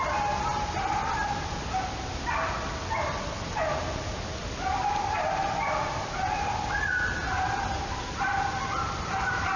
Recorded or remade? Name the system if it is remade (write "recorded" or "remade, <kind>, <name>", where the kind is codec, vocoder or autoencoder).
recorded